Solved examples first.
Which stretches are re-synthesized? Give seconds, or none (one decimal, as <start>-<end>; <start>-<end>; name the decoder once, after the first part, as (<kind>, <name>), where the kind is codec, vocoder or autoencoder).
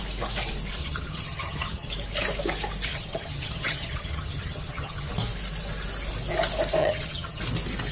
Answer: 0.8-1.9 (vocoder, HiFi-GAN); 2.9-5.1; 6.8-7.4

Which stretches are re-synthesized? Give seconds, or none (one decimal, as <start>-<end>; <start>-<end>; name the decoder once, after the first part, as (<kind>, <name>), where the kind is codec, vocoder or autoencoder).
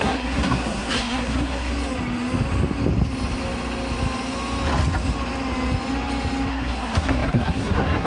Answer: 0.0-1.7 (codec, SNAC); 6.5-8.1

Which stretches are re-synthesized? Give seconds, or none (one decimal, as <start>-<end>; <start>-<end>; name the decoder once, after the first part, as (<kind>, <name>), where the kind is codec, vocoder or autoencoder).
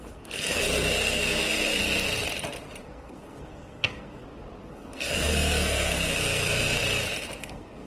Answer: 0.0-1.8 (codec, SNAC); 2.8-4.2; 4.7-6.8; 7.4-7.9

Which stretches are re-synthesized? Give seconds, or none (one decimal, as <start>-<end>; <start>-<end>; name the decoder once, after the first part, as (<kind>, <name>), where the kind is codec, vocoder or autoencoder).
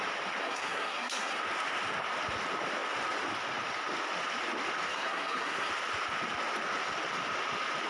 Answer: 0.4-1.4 (codec, SNAC); 4.9-5.7